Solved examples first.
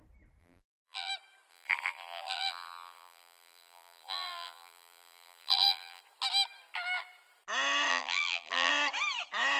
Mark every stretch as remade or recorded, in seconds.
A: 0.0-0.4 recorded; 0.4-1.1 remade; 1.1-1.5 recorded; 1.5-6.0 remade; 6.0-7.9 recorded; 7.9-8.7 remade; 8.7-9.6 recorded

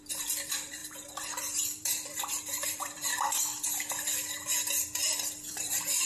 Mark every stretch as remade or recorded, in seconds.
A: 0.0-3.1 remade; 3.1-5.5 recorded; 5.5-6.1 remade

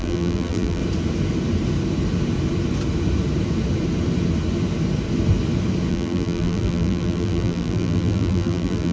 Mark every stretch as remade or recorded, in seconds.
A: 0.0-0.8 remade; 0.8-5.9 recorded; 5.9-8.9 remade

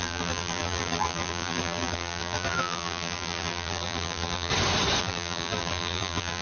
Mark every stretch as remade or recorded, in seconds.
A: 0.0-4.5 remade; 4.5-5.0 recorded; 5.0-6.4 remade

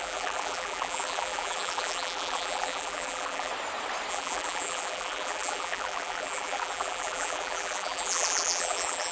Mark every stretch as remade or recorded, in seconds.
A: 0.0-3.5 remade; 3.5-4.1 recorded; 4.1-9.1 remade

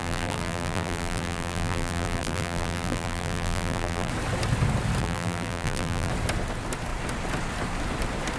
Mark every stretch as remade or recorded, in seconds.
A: 0.0-4.1 remade; 4.1-5.0 recorded; 5.0-6.1 remade; 6.1-8.4 recorded

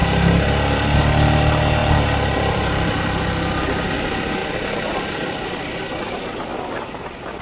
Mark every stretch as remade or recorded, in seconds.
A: 0.0-0.8 remade; 0.8-1.8 recorded; 1.8-2.9 remade; 2.9-4.4 recorded; 4.4-5.8 remade; 5.8-6.5 recorded; 6.5-7.4 remade